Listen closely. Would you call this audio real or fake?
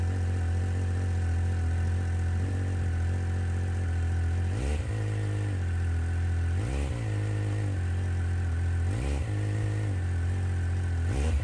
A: real